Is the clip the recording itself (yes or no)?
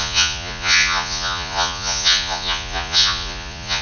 no